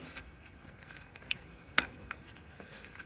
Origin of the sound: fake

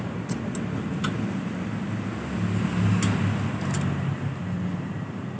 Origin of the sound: real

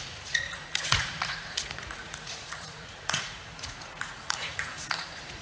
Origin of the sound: fake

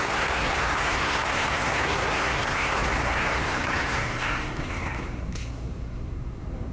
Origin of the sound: fake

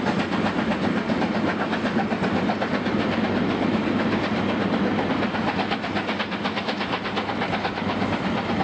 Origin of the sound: real